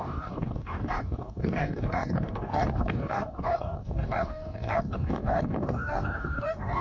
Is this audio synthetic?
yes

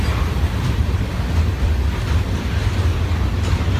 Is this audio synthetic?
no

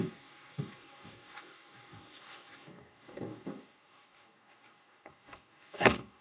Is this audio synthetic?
yes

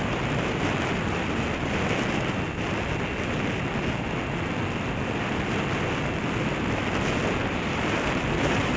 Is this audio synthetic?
no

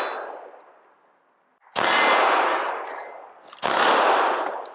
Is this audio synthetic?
no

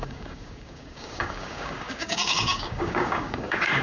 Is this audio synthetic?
yes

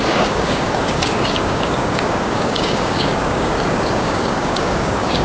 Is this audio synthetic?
yes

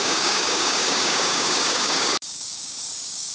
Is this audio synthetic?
yes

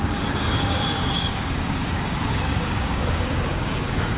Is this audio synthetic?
yes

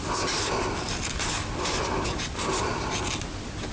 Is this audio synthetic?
no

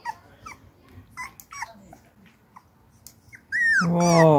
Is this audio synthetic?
no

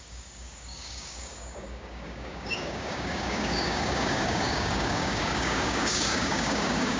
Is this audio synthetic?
yes